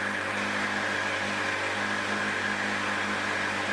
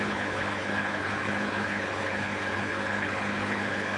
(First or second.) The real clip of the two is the first